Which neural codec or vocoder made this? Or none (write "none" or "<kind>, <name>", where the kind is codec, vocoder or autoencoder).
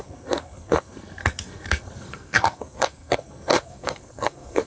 codec, SNAC